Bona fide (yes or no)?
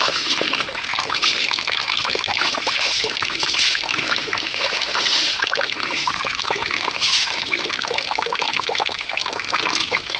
no